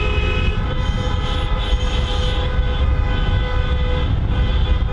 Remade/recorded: recorded